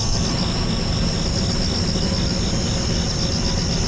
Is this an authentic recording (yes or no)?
yes